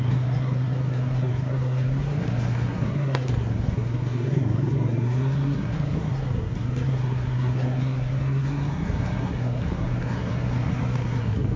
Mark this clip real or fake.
fake